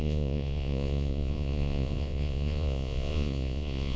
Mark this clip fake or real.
fake